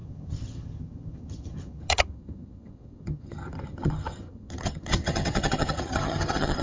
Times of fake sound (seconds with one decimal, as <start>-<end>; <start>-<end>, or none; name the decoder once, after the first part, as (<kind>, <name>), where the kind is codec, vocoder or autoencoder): 0.0-6.6 (vocoder, HiFi-GAN)